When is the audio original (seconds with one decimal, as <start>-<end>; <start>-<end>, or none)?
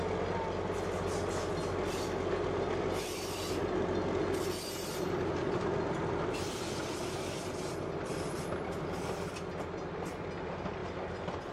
0.0-4.9; 8.8-11.5